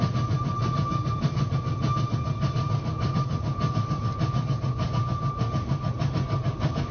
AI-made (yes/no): no